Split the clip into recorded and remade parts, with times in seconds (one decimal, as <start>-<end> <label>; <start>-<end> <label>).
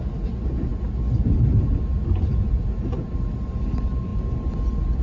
0.0-5.0 recorded